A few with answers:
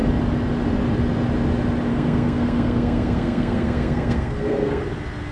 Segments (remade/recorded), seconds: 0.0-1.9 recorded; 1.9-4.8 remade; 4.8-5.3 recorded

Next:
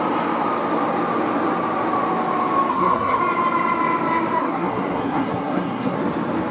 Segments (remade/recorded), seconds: 0.0-2.7 recorded; 2.7-3.2 remade; 3.2-4.4 recorded; 4.4-6.0 remade; 6.0-6.5 recorded

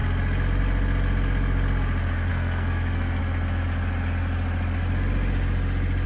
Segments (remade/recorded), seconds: 0.0-2.3 recorded; 2.3-3.2 remade; 3.2-6.1 recorded

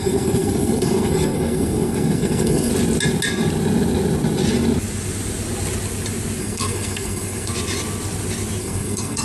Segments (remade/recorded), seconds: 0.0-2.7 remade; 2.7-6.4 recorded; 6.4-7.5 remade; 7.5-8.6 recorded; 8.6-9.2 remade

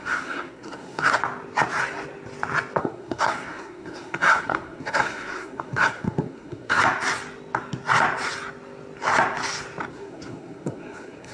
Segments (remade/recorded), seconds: 0.0-1.2 remade; 1.2-2.8 recorded; 2.8-6.8 remade; 6.8-9.9 recorded; 9.9-11.3 remade

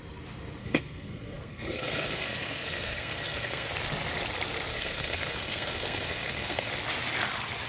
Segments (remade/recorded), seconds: 0.0-0.6 recorded; 0.6-3.7 remade; 3.7-4.7 recorded; 4.7-6.7 remade; 6.7-7.7 recorded

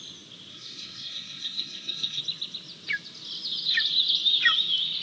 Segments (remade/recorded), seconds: 0.0-0.5 recorded; 0.5-2.2 remade; 2.2-5.0 recorded